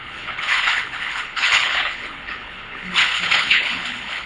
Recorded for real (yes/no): no